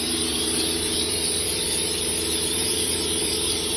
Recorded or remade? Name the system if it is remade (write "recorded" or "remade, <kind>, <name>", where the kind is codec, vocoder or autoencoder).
remade, vocoder, BigVGAN v2